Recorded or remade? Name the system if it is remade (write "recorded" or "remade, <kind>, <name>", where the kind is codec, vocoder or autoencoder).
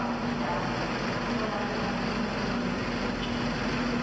recorded